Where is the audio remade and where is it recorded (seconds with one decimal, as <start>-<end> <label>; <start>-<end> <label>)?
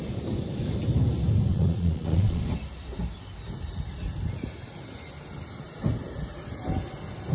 0.0-1.5 recorded; 1.5-2.4 remade; 2.4-7.3 recorded